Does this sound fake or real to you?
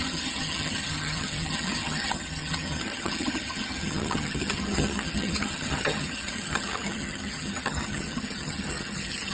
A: fake